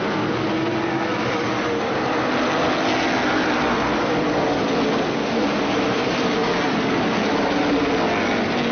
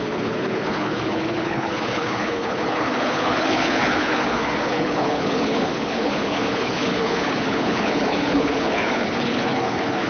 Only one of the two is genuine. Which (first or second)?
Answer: first